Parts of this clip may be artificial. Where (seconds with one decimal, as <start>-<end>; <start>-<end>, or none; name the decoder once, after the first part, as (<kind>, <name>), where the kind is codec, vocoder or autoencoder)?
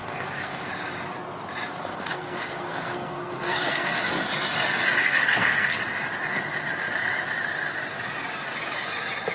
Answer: 0.0-0.7 (codec, SNAC); 1.9-4.1; 5.0-5.8